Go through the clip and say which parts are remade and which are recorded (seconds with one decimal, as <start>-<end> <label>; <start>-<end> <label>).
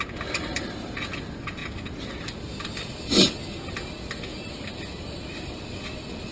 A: 0.0-0.5 recorded; 0.5-1.1 remade; 1.1-4.3 recorded; 4.3-4.8 remade; 4.8-6.3 recorded